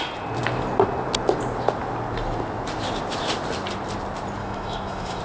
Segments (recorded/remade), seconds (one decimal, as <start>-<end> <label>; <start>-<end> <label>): 0.0-4.4 recorded; 4.4-5.2 remade